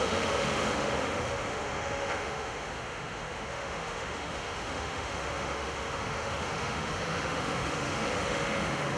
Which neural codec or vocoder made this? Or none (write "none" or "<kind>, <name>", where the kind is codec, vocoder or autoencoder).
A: autoencoder, DAC-VAE